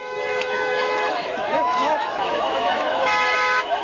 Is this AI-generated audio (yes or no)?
yes